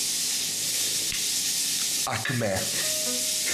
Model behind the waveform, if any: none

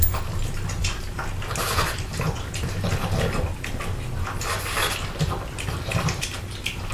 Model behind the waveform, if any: none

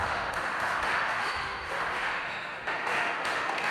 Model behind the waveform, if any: autoencoder, DAC-VAE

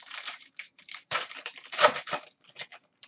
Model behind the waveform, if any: vocoder, BigVGAN v2